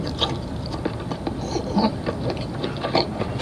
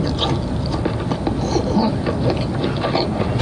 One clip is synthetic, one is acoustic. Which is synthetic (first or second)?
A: first